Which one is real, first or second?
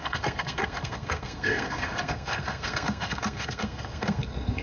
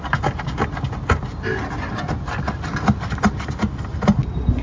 second